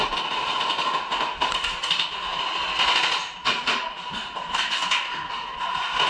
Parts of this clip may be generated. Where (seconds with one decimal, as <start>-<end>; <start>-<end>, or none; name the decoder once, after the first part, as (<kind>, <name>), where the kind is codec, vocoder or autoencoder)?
none